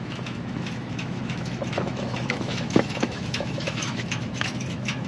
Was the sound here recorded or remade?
remade